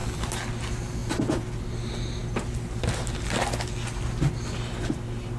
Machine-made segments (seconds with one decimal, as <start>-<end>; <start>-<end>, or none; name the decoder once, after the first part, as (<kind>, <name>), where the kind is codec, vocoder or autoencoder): none